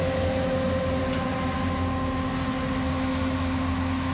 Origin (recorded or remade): recorded